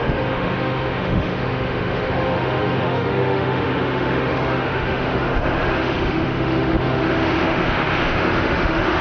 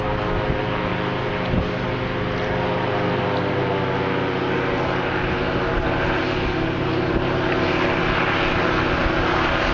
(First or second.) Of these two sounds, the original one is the second